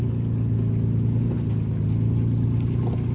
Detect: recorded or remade recorded